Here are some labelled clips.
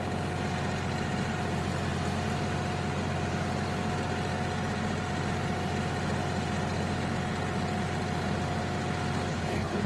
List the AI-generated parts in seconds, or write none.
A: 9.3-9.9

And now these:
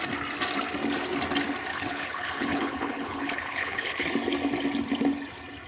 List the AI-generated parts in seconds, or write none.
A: 1.7-4.1

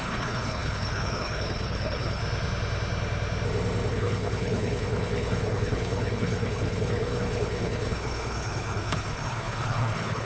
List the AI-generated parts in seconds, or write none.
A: 0.0-2.2; 3.9-10.3

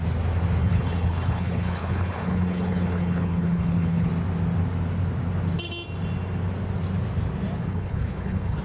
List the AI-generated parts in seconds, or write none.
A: 0.6-4.1; 7.6-8.6

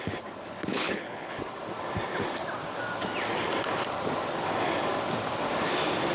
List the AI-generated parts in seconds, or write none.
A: 0.7-1.3